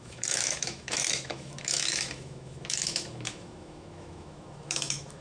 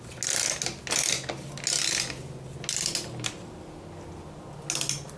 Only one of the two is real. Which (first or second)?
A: second